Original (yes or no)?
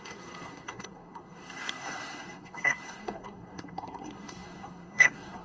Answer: no